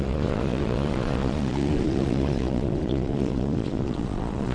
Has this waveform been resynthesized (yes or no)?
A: yes